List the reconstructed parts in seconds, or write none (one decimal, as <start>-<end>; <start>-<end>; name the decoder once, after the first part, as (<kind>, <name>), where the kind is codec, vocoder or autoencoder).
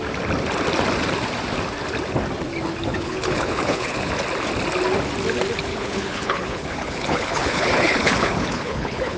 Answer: 2.9-4.1 (codec, HILCodec); 5.7-9.2